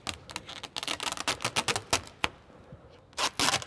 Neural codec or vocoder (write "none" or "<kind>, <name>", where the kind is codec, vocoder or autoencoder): none